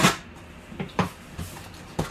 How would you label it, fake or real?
real